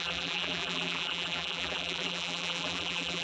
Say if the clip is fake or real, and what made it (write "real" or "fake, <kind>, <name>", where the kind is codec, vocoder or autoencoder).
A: fake, vocoder, BigVGAN v2